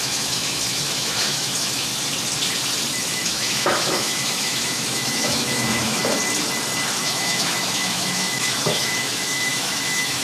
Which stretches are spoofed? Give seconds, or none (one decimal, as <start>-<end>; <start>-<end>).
0.0-1.9; 3.0-6.0; 7.0-10.2